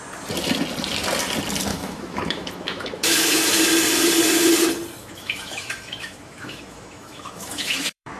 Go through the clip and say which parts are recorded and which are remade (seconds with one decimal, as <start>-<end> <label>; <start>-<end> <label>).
0.0-1.7 recorded; 1.7-3.4 remade; 3.4-5.0 recorded; 5.0-8.2 remade